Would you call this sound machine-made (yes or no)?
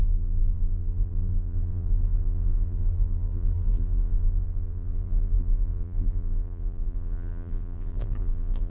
yes